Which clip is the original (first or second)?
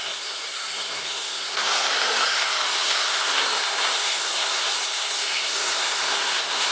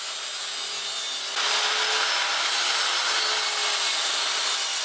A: second